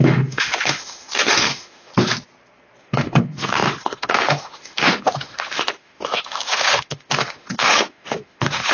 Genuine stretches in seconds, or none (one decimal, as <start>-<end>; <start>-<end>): 1.9-2.8